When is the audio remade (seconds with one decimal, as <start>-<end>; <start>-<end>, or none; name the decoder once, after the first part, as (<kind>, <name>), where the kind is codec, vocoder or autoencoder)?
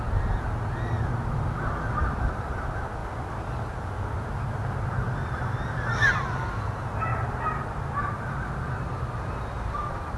none